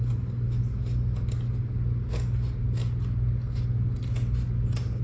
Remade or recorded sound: recorded